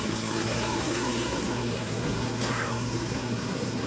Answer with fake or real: fake